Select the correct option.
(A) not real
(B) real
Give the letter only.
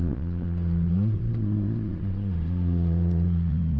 A